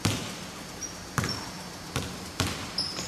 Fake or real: real